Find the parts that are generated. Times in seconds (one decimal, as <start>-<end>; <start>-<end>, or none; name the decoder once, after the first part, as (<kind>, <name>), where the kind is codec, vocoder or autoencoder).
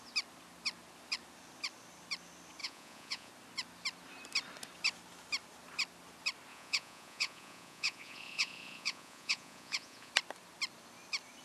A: 2.6-3.3 (vocoder, Vocos); 6.5-10.1